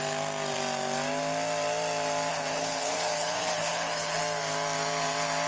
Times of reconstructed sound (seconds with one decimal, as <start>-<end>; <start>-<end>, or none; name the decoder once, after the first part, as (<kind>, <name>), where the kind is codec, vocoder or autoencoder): 2.3-4.2 (codec, HILCodec)